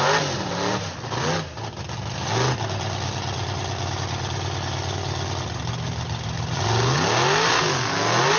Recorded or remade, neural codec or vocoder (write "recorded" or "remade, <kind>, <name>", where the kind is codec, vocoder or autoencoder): recorded